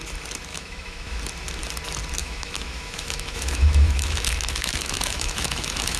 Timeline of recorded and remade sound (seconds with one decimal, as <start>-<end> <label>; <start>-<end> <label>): 0.0-0.5 recorded; 0.5-1.2 remade; 1.2-2.2 recorded; 2.2-6.0 remade

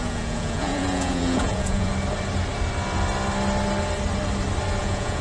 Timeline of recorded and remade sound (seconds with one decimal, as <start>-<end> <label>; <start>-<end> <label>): 0.0-1.9 remade; 1.9-4.8 recorded; 4.8-5.2 remade

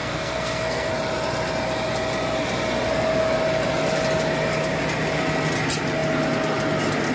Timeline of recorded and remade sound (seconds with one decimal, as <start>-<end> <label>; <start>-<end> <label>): 0.0-0.9 remade; 0.9-7.1 recorded

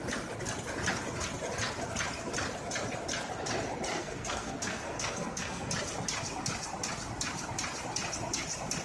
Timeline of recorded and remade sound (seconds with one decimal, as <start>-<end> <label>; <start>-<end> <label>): 0.0-3.9 recorded; 3.9-5.7 remade; 5.7-8.8 recorded

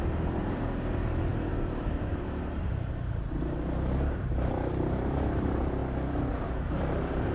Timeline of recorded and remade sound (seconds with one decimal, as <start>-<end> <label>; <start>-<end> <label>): 0.0-5.8 remade; 5.8-6.4 recorded; 6.4-7.3 remade

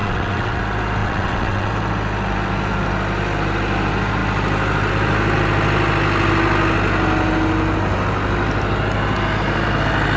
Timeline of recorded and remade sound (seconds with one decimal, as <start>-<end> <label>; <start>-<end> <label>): 0.0-0.6 remade; 0.6-1.0 recorded; 1.0-1.7 remade; 1.7-10.2 recorded